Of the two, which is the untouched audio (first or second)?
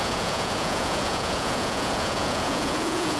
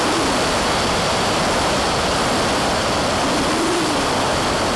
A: second